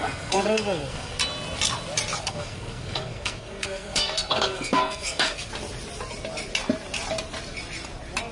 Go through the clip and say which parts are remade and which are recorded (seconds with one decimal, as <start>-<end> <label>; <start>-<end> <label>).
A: 0.0-1.2 remade; 1.2-2.2 recorded; 2.2-5.5 remade; 5.5-8.3 recorded